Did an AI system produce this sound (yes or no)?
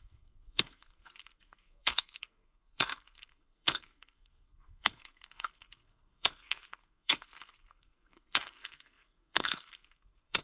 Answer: yes